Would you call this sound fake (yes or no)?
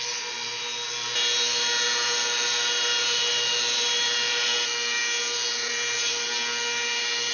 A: no